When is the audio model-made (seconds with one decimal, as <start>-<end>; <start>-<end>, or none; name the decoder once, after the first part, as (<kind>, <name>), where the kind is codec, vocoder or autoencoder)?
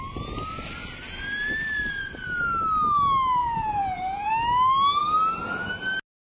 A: 3.4-4.3 (vocoder, Vocos)